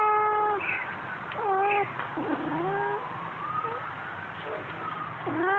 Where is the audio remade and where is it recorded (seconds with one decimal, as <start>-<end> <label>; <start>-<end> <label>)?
0.0-5.6 recorded